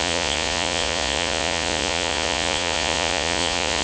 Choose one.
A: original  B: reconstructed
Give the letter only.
B